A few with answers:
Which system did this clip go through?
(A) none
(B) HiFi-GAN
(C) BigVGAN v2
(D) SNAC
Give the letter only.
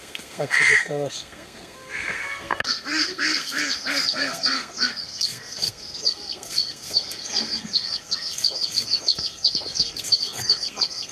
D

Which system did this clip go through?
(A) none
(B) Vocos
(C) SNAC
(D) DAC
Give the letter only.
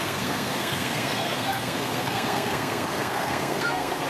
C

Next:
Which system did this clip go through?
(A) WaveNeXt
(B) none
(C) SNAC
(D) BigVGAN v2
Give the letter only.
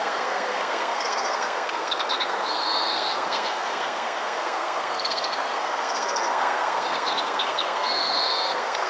C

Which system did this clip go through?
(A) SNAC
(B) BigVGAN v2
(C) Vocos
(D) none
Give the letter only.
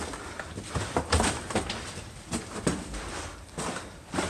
D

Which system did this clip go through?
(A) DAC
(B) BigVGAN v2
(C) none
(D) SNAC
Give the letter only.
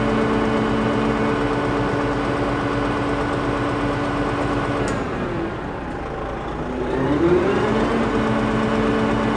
C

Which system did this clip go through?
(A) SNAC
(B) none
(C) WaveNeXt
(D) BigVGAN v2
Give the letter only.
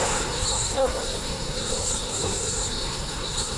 A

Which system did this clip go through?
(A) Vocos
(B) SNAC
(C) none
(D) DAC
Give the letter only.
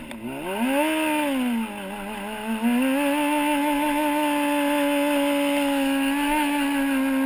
C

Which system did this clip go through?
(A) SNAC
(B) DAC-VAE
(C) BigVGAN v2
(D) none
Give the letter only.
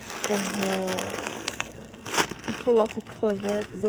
A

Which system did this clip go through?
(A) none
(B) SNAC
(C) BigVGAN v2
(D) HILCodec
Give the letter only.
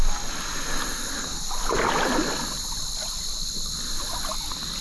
A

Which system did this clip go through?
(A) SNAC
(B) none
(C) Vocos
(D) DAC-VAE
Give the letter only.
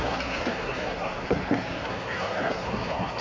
A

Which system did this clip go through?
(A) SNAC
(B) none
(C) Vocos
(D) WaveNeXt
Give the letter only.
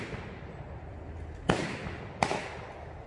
B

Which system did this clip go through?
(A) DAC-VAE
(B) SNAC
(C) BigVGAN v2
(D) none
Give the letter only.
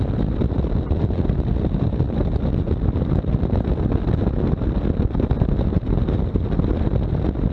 D